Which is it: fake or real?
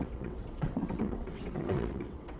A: fake